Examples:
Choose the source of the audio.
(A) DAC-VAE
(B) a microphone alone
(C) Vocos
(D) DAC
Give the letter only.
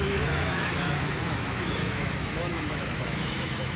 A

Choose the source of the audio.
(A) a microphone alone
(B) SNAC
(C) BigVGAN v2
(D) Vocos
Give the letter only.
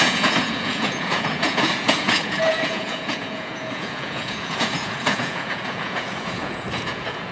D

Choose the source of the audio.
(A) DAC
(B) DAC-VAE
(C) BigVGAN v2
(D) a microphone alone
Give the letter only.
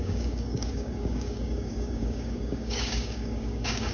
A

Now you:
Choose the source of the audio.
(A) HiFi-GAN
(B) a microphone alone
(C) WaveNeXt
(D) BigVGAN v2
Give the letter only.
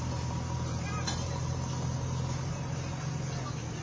B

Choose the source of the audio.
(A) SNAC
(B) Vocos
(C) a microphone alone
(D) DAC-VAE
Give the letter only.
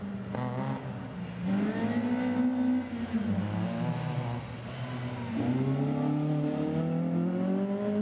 C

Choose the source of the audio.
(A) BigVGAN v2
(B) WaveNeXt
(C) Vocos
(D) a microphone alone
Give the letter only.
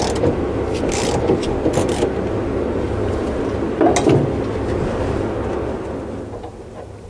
D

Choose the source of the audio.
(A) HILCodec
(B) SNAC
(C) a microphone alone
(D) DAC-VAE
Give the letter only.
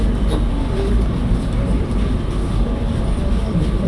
C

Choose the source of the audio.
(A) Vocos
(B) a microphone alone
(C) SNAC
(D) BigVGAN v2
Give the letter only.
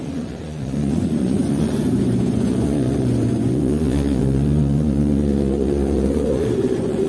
A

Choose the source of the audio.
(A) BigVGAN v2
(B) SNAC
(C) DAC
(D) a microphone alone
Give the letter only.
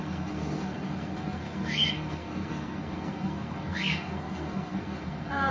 B